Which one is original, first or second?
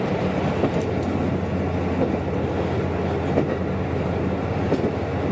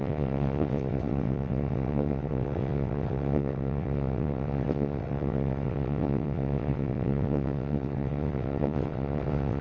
first